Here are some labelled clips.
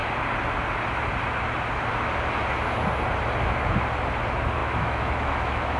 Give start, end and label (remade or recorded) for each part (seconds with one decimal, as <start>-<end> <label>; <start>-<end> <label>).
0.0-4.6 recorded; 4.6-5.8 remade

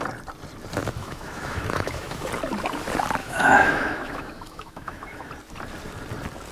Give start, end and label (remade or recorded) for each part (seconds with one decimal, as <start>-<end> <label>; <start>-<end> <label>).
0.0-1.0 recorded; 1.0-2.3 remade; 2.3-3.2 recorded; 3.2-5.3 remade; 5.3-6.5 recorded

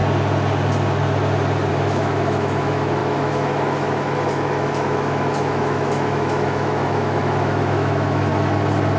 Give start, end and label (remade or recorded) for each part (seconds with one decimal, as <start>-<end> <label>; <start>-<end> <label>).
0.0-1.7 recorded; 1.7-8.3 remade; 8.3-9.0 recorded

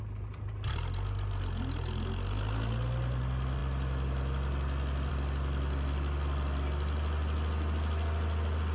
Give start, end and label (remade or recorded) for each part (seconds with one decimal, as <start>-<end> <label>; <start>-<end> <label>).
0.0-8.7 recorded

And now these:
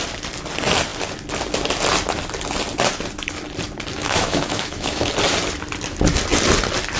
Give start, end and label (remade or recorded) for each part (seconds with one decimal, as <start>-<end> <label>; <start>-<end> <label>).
0.0-4.0 recorded; 4.0-5.1 remade; 5.1-7.0 recorded

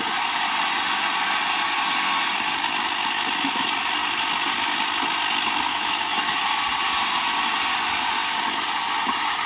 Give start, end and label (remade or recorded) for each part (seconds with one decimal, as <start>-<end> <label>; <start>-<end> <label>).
0.0-5.7 recorded; 5.7-6.4 remade; 6.4-9.5 recorded

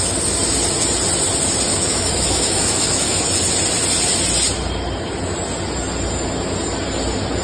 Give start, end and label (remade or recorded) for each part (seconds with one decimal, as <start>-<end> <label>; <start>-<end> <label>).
0.0-1.7 recorded; 1.7-3.2 remade; 3.2-7.4 recorded

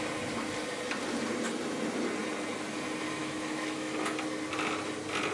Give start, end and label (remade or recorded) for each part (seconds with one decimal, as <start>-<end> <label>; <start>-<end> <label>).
0.0-3.2 recorded; 3.2-3.9 remade; 3.9-5.3 recorded